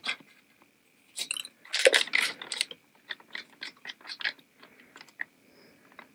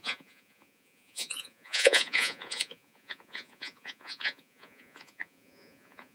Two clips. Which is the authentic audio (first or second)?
first